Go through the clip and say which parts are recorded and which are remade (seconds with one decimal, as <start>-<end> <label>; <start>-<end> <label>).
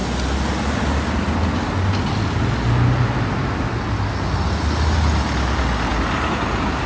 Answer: 0.0-6.9 recorded